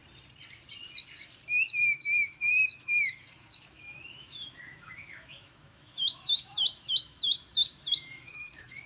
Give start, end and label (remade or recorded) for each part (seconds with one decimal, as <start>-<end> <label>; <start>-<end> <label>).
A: 0.0-1.8 recorded; 1.8-8.9 remade